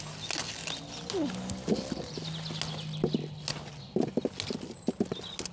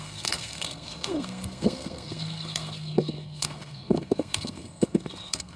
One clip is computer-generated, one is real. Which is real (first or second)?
first